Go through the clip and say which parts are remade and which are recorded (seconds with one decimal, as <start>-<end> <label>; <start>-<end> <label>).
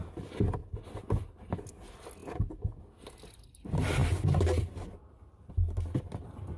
0.0-6.6 recorded